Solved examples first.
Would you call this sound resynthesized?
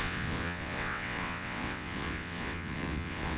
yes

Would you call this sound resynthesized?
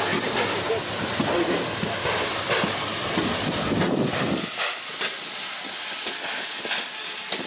no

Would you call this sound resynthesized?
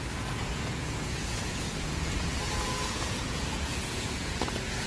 yes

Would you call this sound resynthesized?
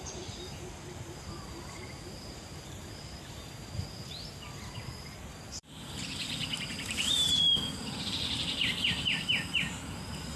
yes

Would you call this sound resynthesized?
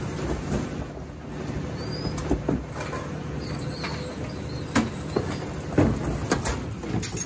no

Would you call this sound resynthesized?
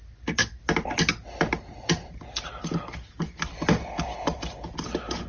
no